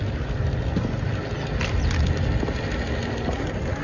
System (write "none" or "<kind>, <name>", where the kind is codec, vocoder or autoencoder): none